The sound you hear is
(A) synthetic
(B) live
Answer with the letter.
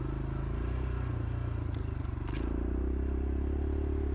B